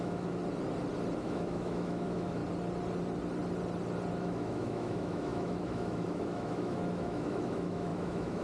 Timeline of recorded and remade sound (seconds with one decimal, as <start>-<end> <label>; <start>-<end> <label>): 0.0-0.4 remade; 0.4-1.2 recorded; 1.2-2.4 remade; 2.4-4.2 recorded; 4.2-8.4 remade